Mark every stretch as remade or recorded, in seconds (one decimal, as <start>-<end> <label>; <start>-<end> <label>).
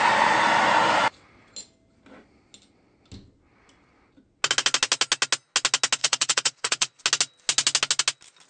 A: 0.0-6.0 recorded; 6.0-7.0 remade; 7.0-8.5 recorded